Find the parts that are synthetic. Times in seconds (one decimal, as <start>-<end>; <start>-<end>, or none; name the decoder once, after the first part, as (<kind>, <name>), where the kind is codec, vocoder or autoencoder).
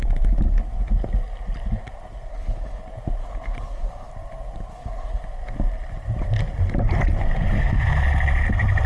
2.3-2.8 (codec, HILCodec); 3.2-4.1; 4.7-5.2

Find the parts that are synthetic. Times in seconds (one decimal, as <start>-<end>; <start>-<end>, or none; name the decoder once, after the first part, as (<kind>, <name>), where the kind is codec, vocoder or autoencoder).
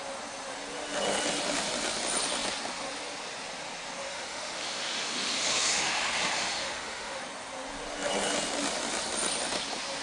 4.0-7.2 (autoencoder, DAC-VAE)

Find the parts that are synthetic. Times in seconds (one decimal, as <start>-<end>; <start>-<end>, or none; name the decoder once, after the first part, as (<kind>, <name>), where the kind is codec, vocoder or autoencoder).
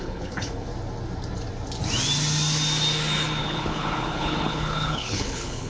0.0-0.7 (codec, HILCodec); 3.4-5.7